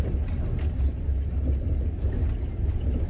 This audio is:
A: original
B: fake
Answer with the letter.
A